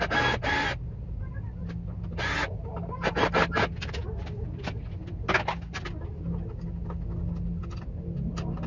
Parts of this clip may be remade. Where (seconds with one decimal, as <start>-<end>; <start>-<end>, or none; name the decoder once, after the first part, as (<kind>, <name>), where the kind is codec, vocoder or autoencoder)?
none

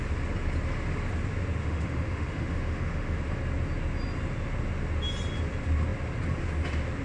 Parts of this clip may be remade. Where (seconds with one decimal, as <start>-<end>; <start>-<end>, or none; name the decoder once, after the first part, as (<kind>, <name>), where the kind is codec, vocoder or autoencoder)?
1.6-3.2 (autoencoder, DAC-VAE)

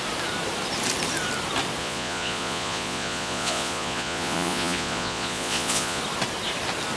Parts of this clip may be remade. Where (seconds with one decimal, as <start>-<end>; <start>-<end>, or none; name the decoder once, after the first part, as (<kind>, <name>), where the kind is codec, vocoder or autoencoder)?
1.8-6.0 (vocoder, Vocos)

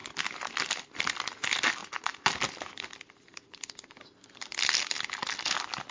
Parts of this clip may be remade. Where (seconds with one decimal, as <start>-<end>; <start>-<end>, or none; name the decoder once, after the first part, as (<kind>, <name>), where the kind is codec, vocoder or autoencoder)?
none

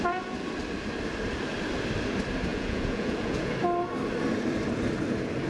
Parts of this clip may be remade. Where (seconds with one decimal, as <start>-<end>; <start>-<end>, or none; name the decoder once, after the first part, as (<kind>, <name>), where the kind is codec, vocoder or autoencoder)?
2.5-3.5 (vocoder, Vocos)

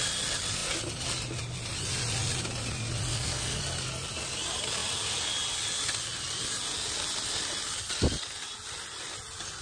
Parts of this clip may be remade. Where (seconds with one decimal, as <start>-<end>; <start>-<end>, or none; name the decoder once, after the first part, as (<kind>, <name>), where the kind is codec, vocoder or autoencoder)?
3.1-3.6 (codec, SNAC)